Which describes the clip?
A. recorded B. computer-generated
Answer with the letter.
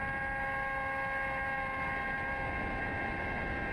A